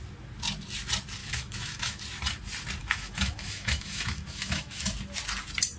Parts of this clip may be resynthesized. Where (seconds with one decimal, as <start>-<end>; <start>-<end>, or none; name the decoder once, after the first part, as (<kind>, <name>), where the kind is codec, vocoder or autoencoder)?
1.2-2.0 (autoencoder, DAC-VAE); 2.8-4.9